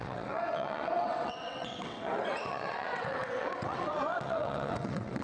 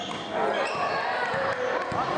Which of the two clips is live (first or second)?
second